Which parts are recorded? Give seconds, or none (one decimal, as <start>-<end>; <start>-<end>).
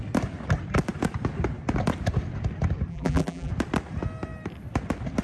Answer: 0.0-2.9; 3.5-5.2